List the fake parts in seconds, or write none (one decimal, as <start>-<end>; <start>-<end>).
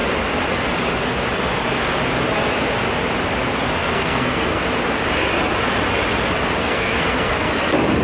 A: 3.8-4.6; 6.6-7.5